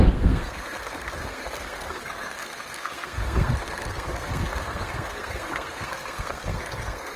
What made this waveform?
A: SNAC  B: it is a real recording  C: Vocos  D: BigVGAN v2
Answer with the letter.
A